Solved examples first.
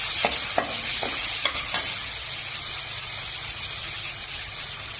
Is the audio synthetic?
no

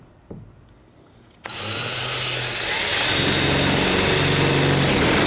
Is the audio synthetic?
no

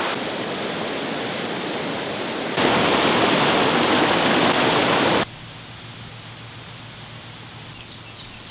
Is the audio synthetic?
no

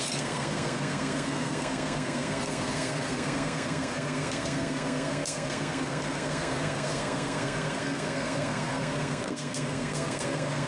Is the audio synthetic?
yes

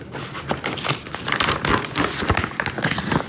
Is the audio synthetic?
no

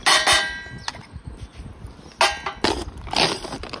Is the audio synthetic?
no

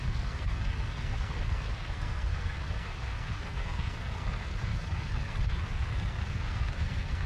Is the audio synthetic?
yes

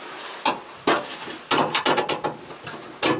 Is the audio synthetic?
no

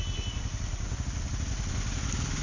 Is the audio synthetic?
no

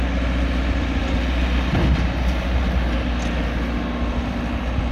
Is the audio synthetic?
no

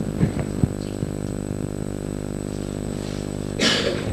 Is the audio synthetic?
yes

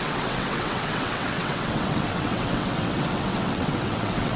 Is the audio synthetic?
yes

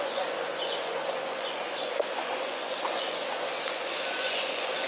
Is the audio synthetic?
yes